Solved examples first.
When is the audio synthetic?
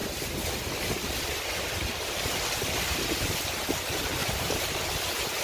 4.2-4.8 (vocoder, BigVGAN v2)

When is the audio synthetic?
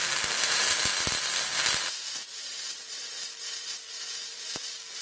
none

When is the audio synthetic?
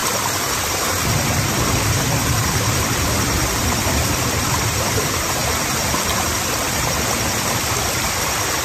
0.0-5.4 (vocoder, BigVGAN v2); 6.1-8.6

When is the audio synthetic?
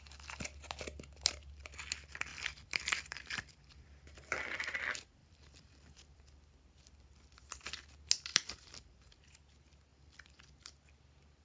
2.3-4.8 (vocoder, BigVGAN v2); 5.2-6.2; 8.3-9.1; 9.9-10.5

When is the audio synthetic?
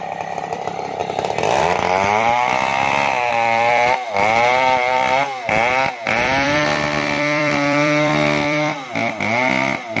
0.0-2.7 (vocoder, BigVGAN v2); 3.3-10.0